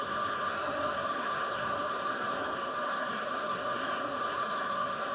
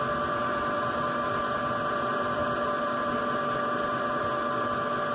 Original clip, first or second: second